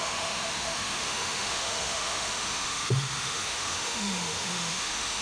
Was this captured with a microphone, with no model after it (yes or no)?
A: no